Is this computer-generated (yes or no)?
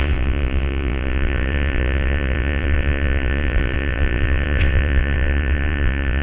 yes